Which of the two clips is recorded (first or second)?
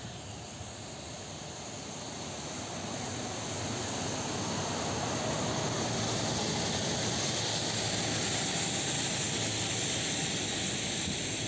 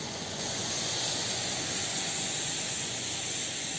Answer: first